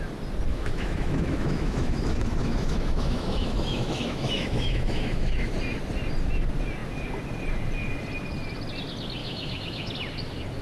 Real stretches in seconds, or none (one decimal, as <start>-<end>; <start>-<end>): 0.0-0.5; 5.5-9.2; 9.9-10.6